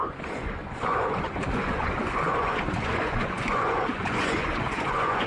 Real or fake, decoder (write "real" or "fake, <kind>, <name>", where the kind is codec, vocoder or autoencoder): fake, vocoder, Vocos